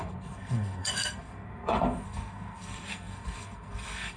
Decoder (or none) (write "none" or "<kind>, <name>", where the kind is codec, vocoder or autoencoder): codec, SNAC